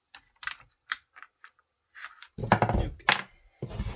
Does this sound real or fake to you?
real